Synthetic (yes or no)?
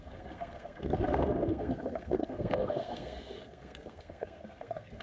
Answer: yes